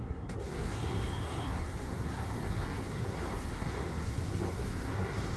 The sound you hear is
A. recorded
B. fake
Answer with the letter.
B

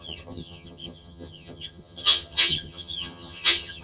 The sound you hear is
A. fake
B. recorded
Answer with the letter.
A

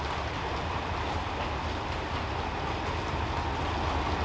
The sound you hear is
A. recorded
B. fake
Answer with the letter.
A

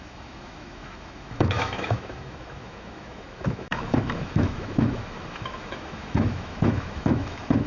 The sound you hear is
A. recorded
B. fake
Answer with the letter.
B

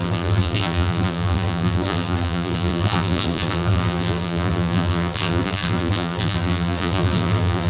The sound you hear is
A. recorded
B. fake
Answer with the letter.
B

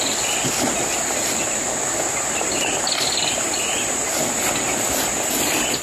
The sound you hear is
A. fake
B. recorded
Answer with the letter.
B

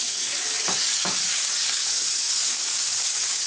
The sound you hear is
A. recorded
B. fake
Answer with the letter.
B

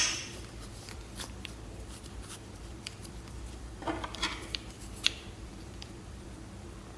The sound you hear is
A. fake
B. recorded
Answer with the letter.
A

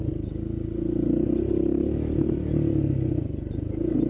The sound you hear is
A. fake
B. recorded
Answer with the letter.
B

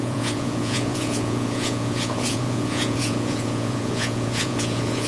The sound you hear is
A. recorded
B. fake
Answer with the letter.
B